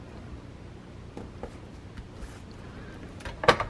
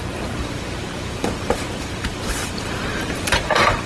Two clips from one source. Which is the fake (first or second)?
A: second